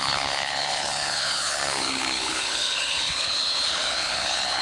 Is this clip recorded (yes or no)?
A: no